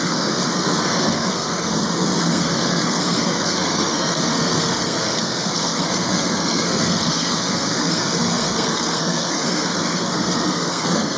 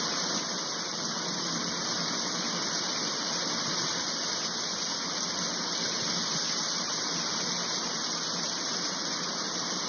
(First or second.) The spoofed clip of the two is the first